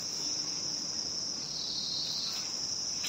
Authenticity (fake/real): real